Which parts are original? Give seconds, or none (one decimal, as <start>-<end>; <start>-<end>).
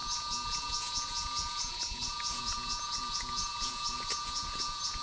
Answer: none